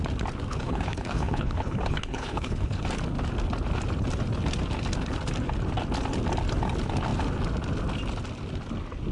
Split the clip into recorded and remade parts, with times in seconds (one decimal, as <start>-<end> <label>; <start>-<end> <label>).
0.0-0.5 recorded; 0.5-2.8 remade; 2.8-9.1 recorded